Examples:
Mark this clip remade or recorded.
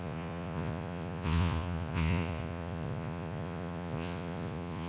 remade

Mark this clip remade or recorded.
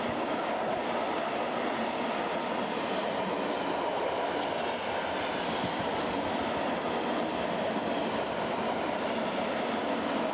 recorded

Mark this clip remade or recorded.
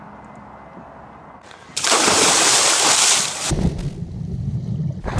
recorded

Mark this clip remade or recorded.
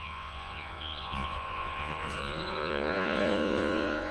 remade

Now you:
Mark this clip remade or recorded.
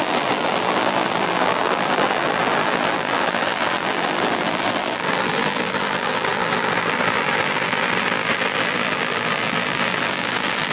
remade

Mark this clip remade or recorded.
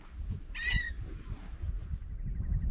recorded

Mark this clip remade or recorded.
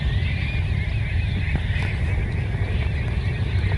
recorded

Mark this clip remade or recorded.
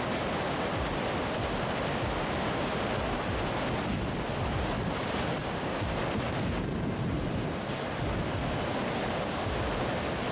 recorded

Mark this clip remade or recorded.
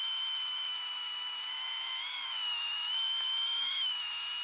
remade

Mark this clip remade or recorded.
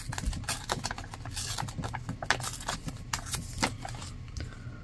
recorded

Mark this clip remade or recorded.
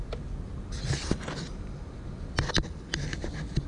recorded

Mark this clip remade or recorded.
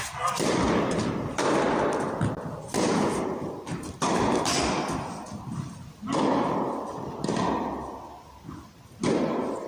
recorded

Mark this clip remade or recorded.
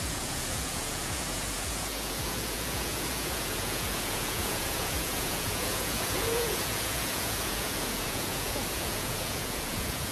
remade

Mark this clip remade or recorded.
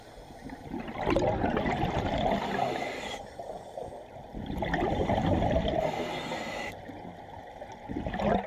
recorded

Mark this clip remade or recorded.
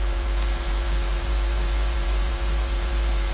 remade